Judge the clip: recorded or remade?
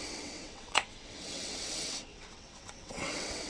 remade